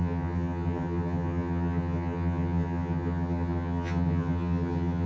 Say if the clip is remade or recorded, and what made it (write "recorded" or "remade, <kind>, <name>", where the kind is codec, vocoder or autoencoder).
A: remade, vocoder, HiFi-GAN